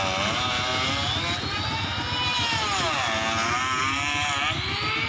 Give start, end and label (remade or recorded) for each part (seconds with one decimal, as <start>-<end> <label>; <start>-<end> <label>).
0.0-5.1 recorded